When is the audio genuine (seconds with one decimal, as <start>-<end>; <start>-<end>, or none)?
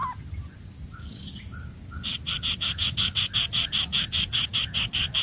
0.0-5.2